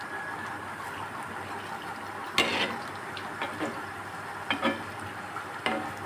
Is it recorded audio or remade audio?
recorded